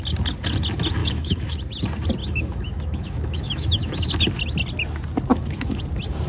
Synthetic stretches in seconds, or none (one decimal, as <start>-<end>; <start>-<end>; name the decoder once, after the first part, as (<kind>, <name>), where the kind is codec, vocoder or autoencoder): 1.0-1.6 (autoencoder, DAC-VAE); 2.2-4.1; 5.3-5.8